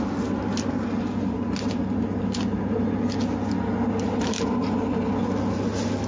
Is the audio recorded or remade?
recorded